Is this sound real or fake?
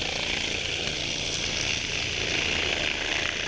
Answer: real